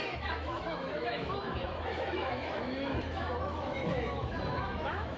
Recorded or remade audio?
remade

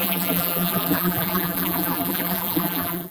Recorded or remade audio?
remade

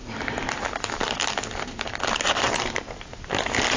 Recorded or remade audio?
recorded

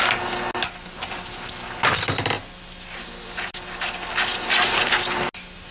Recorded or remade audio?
recorded